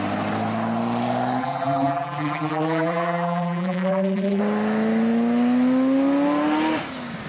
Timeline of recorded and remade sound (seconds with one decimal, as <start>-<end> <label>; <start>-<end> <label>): 0.0-1.4 recorded; 1.4-4.4 remade; 4.4-7.3 recorded